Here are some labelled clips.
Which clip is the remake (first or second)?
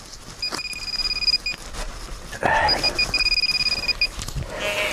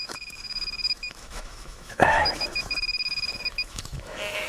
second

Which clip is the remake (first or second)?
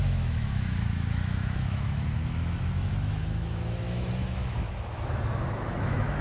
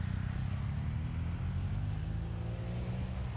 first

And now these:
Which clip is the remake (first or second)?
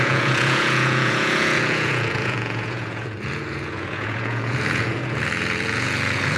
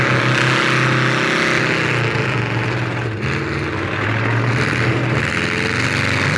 first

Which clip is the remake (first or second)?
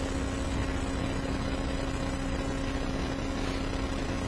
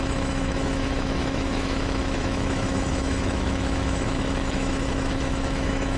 second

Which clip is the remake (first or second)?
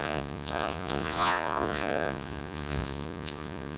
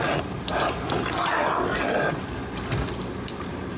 first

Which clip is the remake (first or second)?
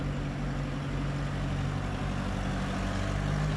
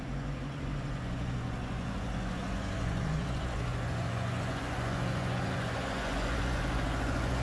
second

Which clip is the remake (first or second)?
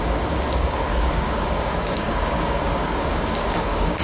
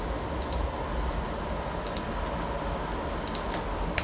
first